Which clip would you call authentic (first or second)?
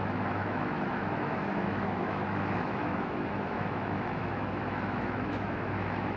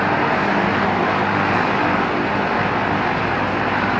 second